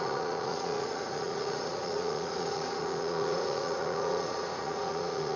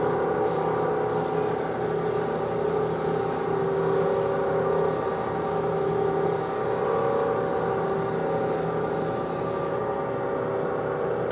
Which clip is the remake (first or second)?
first